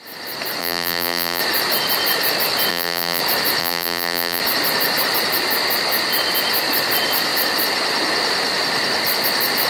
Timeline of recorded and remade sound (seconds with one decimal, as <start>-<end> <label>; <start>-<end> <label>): 0.0-0.6 recorded; 0.6-1.4 remade; 1.4-2.7 recorded; 2.7-3.2 remade; 3.2-3.6 recorded; 3.6-4.4 remade; 4.4-9.7 recorded